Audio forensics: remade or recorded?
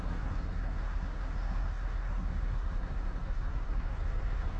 remade